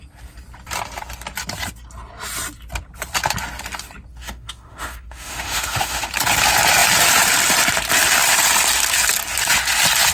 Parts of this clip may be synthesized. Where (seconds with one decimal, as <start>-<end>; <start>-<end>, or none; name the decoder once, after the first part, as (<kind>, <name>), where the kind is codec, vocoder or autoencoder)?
4.1-6.1 (autoencoder, DAC-VAE)